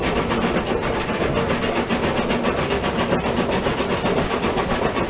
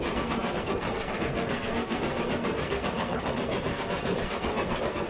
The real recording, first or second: first